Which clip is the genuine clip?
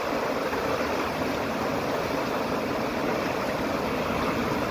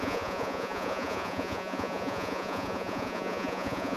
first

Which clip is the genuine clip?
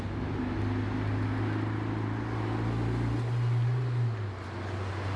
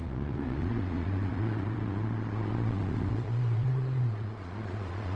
first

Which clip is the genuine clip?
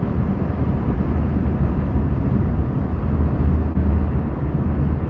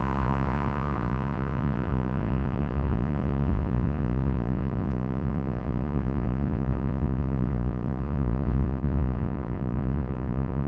first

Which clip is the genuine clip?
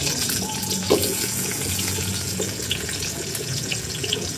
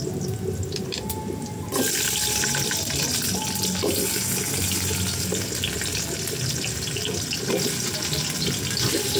second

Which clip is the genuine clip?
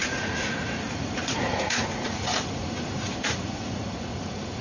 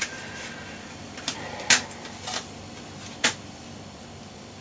second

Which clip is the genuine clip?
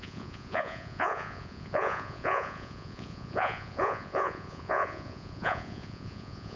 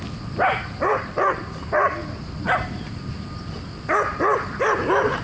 second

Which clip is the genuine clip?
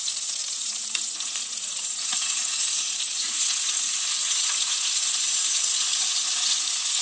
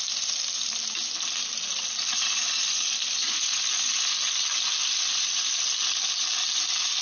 second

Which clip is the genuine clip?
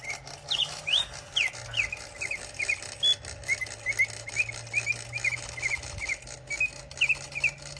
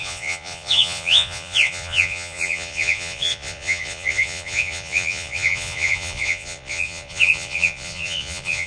first